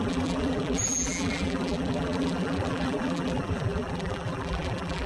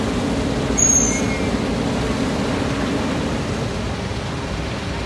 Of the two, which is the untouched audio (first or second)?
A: second